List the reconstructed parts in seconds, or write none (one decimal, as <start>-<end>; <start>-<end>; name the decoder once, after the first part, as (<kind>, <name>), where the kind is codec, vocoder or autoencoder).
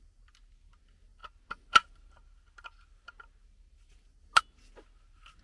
none